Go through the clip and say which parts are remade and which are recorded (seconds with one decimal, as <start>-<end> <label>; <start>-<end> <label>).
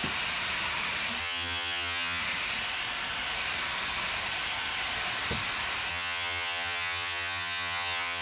0.0-1.2 recorded; 1.2-2.2 remade; 2.2-5.9 recorded; 5.9-8.2 remade